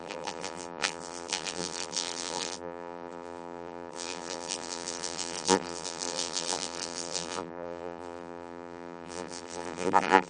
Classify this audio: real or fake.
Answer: fake